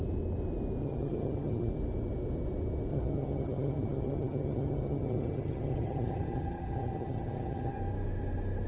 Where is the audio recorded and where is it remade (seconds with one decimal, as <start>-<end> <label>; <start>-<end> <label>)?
0.0-0.8 recorded; 0.8-1.7 remade; 1.7-2.9 recorded; 2.9-7.8 remade; 7.8-8.7 recorded